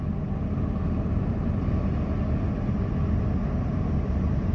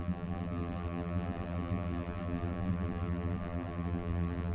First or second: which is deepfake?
second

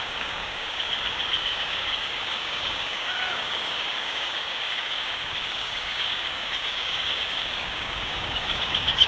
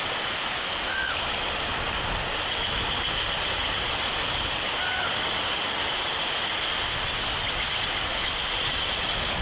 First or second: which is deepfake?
first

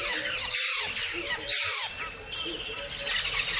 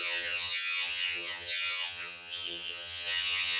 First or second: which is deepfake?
second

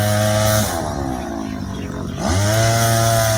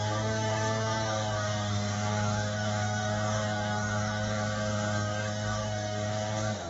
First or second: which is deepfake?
second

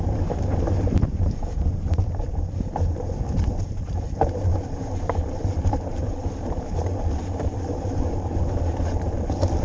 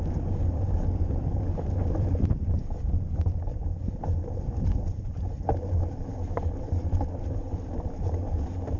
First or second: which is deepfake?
first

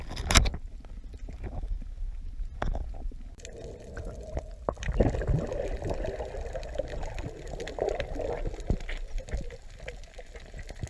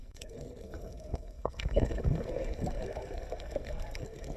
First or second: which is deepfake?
second